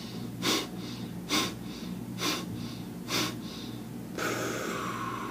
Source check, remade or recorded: recorded